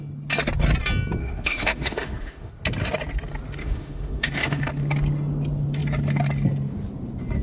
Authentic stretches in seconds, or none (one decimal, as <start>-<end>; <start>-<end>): 0.0-1.2; 2.5-3.6; 4.7-7.4